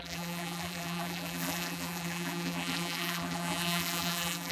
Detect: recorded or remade remade